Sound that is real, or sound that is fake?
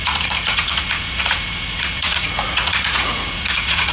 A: fake